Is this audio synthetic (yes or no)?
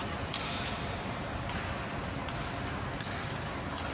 no